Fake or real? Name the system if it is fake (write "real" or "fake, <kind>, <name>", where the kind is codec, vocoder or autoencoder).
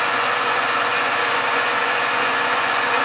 fake, vocoder, Vocos